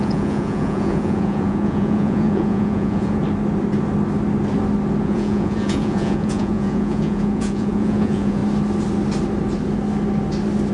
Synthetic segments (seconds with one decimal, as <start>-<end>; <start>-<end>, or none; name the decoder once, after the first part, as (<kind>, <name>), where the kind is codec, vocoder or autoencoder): 0.0-3.2 (vocoder, Vocos); 5.0-8.4